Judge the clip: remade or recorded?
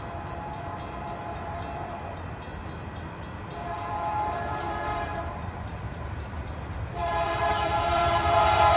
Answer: remade